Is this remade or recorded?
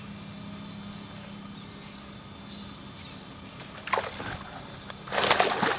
recorded